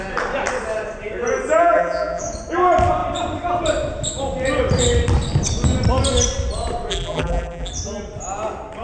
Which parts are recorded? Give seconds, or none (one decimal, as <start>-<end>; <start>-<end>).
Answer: 0.0-1.6; 2.2-6.9; 7.7-8.8